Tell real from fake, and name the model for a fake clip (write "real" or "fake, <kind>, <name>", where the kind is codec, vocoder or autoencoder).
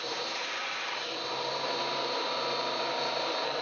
fake, vocoder, BigVGAN v2